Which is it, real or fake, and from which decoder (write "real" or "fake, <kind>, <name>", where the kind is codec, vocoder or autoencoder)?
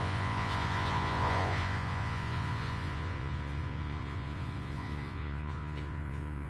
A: fake, vocoder, Vocos